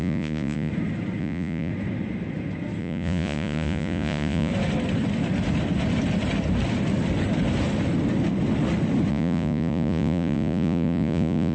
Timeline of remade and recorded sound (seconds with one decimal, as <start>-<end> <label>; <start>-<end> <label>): 0.0-0.7 remade; 0.7-1.2 recorded; 1.2-1.7 remade; 1.7-2.8 recorded; 2.8-4.5 remade; 4.5-9.1 recorded; 9.1-11.5 remade